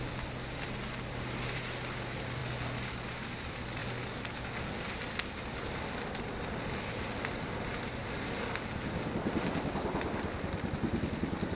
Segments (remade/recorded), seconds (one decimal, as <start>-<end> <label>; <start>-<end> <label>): 0.0-11.5 recorded